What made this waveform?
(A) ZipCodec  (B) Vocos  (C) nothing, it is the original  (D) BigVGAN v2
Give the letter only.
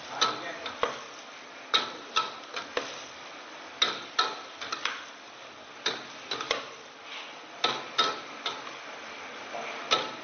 C